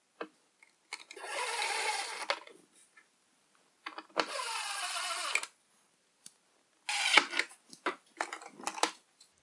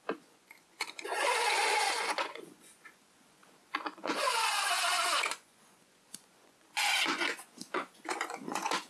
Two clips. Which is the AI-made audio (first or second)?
second